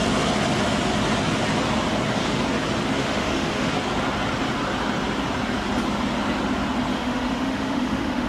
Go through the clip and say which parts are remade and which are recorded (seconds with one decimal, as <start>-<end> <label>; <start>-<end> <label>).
0.0-3.0 recorded; 3.0-3.7 remade; 3.7-6.9 recorded; 6.9-8.3 remade